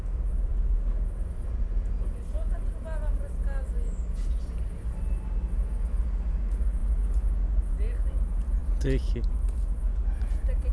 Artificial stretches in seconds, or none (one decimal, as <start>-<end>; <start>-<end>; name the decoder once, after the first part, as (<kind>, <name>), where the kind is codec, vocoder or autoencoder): none